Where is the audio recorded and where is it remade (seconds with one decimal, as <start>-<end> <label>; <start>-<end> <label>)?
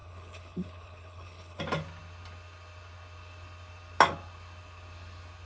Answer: 0.0-1.6 remade; 1.6-5.5 recorded